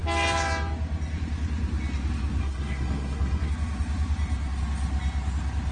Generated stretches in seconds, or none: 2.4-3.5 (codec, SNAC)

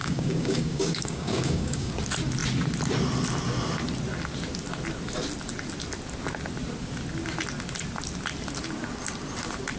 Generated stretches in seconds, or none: 0.0-1.9 (codec, DAC)

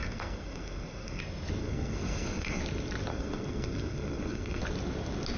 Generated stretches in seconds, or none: 0.0-1.2 (codec, SNAC); 1.6-2.6; 3.1-4.6

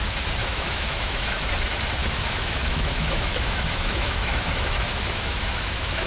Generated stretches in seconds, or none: 0.4-1.5 (autoencoder, DAC-VAE); 2.0-6.1

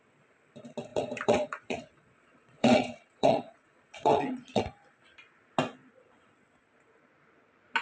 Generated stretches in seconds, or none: 0.9-4.6 (vocoder, Vocos)

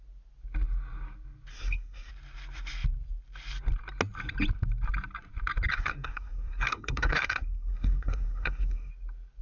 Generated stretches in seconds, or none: 1.5-2.1 (codec, SNAC); 5.7-8.9